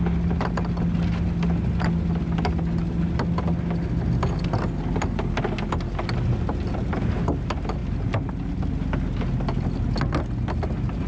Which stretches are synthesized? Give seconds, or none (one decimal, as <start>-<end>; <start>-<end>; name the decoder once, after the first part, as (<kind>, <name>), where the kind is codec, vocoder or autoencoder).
none